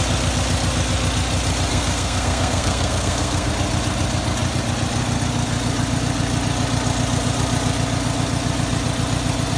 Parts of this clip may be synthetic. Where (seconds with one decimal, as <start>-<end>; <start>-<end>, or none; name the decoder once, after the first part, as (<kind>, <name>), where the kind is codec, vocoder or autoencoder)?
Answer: 1.7-3.5 (codec, SNAC)